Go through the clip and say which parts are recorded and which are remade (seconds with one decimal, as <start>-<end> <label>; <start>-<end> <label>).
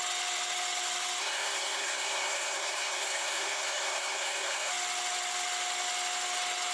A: 0.0-1.2 recorded; 1.2-4.7 remade; 4.7-6.7 recorded